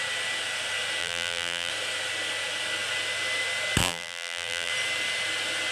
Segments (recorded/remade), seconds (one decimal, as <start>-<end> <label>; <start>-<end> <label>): 0.0-1.0 recorded; 1.0-1.7 remade; 1.7-3.8 recorded; 3.8-4.7 remade; 4.7-5.7 recorded